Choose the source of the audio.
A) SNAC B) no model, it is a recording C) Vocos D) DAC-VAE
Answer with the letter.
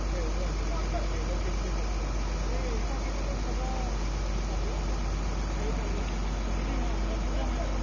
B